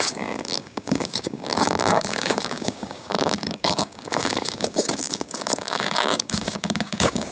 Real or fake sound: fake